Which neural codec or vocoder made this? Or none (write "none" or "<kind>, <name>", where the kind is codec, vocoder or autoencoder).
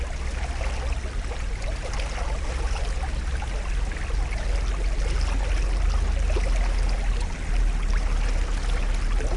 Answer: none